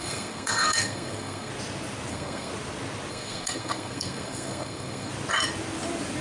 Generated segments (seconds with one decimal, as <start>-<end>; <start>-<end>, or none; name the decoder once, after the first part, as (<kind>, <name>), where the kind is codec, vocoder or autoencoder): 0.0-1.5 (codec, SNAC); 2.1-2.5; 3.1-5.1